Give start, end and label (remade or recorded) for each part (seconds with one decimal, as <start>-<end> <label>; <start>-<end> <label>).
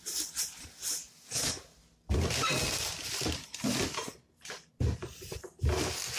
0.0-1.8 recorded; 1.8-5.5 remade; 5.5-6.2 recorded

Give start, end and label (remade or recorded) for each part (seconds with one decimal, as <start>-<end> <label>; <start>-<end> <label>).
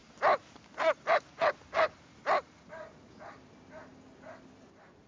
0.0-5.1 recorded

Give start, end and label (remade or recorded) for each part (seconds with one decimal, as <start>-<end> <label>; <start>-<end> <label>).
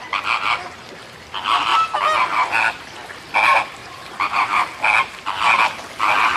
0.0-3.8 recorded; 3.8-4.8 remade; 4.8-6.4 recorded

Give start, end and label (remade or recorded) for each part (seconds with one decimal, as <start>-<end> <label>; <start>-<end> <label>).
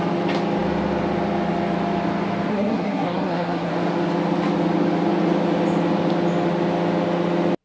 0.0-2.5 recorded; 2.5-3.7 remade; 3.7-7.6 recorded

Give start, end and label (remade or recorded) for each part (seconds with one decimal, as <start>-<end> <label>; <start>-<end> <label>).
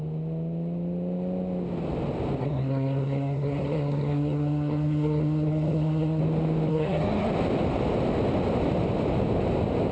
0.0-2.4 recorded; 2.4-6.2 remade; 6.2-6.7 recorded; 6.7-7.3 remade; 7.3-9.9 recorded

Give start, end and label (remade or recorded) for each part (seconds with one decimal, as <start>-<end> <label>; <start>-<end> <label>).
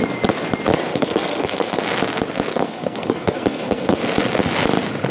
0.0-0.9 recorded; 0.9-1.8 remade; 1.8-2.5 recorded; 2.5-4.0 remade; 4.0-5.1 recorded